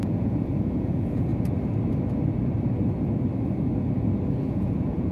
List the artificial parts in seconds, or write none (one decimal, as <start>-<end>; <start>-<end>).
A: 0.0-1.3; 4.4-5.1

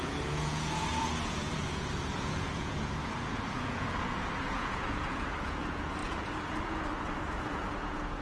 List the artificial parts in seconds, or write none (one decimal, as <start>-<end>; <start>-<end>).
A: 0.0-8.2